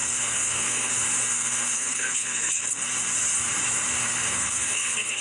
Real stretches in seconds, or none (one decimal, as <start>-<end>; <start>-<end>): 0.9-1.3; 2.5-4.0